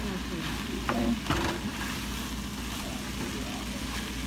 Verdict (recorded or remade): recorded